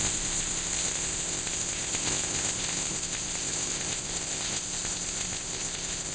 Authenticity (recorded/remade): remade